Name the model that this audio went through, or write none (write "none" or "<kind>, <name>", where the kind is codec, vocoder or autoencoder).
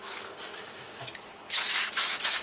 autoencoder, DAC-VAE